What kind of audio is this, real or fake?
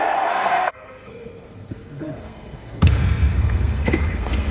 fake